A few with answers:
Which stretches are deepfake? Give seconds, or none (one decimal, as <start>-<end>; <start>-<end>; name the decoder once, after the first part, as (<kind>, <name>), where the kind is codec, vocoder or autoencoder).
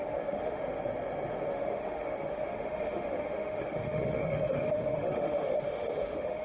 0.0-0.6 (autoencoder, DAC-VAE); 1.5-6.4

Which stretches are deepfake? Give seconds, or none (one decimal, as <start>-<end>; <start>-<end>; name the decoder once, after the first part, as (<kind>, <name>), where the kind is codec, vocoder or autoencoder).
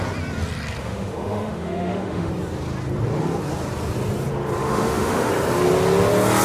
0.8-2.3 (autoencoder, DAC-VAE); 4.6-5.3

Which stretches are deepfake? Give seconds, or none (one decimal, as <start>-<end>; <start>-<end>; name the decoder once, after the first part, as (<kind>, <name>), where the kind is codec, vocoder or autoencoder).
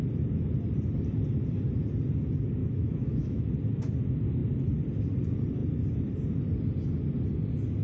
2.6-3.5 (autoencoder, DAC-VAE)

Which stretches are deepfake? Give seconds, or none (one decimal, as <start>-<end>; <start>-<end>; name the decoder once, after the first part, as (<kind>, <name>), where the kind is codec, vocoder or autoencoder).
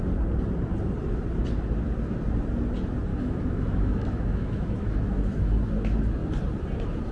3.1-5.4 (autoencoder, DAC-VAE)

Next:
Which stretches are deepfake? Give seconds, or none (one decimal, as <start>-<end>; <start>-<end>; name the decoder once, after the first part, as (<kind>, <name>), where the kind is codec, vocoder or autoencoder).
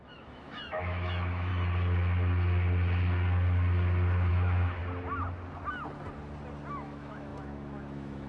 0.0-1.5 (autoencoder, DAC-VAE); 4.3-4.8; 6.7-8.3